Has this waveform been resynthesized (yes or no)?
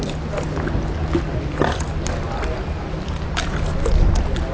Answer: no